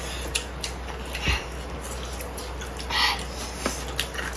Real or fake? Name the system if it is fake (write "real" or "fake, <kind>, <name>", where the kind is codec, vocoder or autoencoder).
real